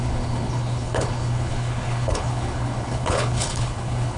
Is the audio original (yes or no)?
no